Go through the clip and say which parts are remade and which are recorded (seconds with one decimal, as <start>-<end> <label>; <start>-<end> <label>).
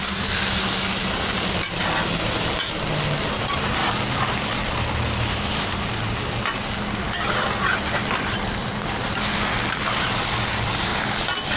0.0-11.6 recorded